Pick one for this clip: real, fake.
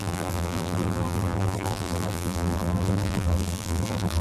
fake